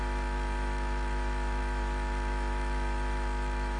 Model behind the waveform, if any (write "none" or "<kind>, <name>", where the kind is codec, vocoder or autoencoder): autoencoder, DAC-VAE